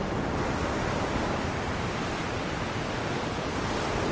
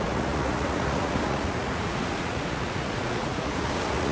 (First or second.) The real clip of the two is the first